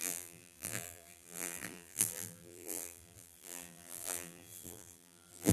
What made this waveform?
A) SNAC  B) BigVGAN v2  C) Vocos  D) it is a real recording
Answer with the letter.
B